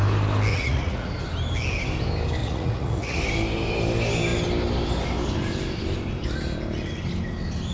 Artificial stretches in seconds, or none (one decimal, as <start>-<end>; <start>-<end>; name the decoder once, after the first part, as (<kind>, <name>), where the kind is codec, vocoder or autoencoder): 0.5-1.1 (vocoder, Vocos); 2.4-3.2